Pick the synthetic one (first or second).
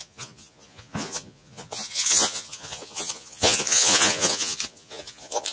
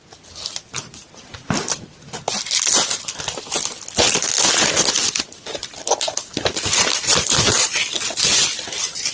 first